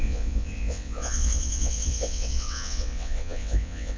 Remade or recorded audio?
remade